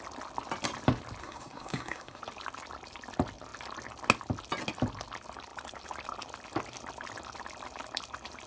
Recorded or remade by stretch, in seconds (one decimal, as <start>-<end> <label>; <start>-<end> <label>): 0.0-1.2 recorded; 1.2-2.2 remade; 2.2-8.5 recorded